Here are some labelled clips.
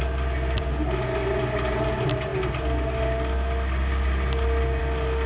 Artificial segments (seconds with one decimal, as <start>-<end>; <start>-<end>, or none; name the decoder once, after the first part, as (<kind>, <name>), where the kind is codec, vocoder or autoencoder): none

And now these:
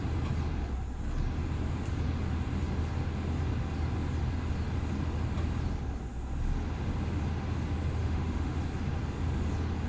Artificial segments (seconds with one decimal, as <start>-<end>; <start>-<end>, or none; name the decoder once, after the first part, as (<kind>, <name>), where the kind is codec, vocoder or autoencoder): 8.0-8.6 (autoencoder, DAC-VAE)

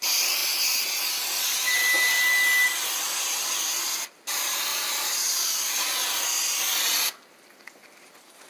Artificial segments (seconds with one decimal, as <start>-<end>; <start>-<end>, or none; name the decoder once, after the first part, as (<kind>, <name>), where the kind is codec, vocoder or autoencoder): 4.7-5.8 (vocoder, BigVGAN v2)